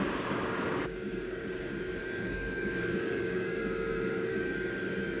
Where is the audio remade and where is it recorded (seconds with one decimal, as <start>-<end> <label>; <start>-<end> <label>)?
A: 0.0-5.2 remade